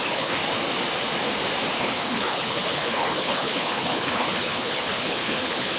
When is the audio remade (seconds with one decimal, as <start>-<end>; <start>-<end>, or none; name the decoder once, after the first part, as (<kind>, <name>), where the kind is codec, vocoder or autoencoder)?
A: 0.0-0.4 (codec, HILCodec); 1.8-5.8